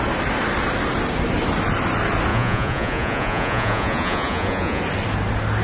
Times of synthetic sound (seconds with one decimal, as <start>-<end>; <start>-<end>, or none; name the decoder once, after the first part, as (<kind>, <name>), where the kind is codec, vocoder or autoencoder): 2.3-4.8 (vocoder, Vocos)